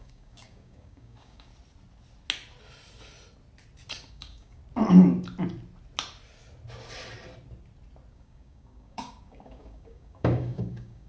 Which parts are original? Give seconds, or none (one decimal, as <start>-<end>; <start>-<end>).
1.5-4.1; 4.6-8.1